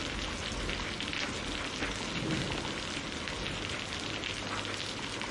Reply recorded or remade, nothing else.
recorded